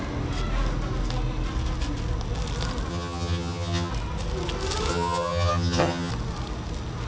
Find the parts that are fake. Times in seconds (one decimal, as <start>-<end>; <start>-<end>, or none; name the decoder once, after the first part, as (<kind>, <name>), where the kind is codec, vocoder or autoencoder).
2.9-3.9 (vocoder, HiFi-GAN); 4.9-6.1